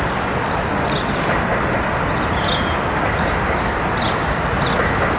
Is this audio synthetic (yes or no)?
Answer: no